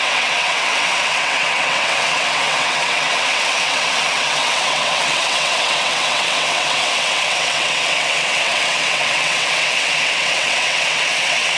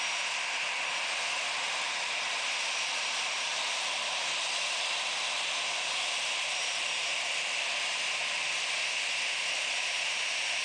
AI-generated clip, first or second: first